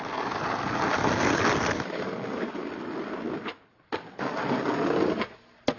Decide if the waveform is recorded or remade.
recorded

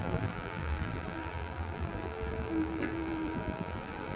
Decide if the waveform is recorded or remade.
remade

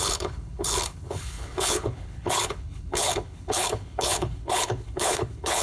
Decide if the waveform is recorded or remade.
remade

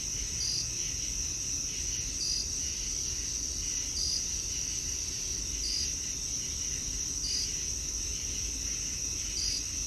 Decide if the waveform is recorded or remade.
recorded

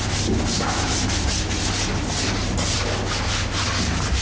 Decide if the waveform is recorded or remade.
recorded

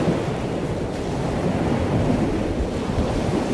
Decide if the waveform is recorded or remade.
recorded